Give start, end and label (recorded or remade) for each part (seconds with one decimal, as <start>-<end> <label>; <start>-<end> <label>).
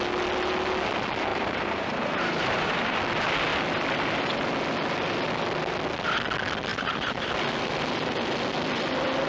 0.0-1.3 recorded; 1.3-3.0 remade; 3.0-6.7 recorded; 6.7-7.3 remade; 7.3-9.3 recorded